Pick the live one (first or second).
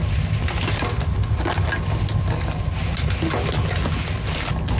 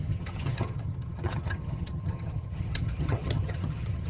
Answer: first